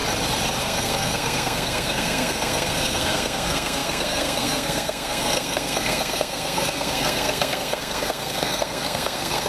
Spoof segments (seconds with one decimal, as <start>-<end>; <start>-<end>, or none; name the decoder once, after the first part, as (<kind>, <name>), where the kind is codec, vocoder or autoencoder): 0.6-9.5 (codec, SNAC)